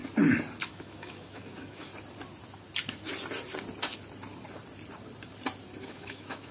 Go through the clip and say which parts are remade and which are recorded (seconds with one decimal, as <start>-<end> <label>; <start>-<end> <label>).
0.0-0.7 recorded; 0.7-1.9 remade; 1.9-5.8 recorded; 5.8-6.5 remade